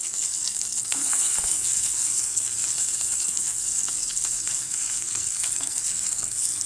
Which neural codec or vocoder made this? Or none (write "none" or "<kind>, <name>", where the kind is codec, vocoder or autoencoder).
codec, SNAC